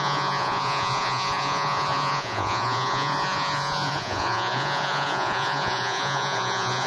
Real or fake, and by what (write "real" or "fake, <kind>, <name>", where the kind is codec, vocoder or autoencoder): fake, vocoder, Vocos